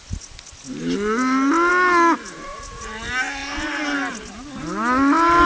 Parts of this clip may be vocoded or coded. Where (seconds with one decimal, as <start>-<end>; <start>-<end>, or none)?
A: 2.2-2.9